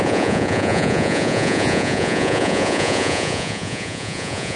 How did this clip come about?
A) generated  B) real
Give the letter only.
A